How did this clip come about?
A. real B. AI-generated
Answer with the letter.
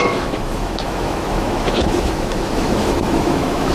B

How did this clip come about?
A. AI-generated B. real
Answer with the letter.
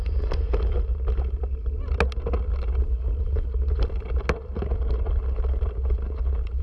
B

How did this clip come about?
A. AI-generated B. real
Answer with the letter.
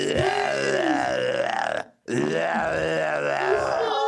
B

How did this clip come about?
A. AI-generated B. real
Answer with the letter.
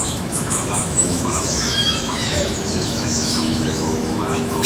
A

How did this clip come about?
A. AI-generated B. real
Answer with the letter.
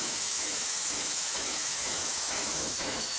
A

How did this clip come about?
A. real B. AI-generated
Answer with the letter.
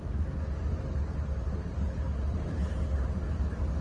A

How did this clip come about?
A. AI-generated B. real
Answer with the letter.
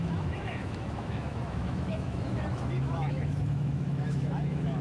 A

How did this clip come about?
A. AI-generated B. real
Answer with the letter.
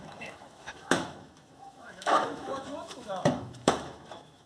A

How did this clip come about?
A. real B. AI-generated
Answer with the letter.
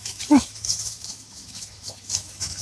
B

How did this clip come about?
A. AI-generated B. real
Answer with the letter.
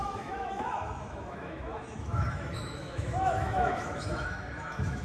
A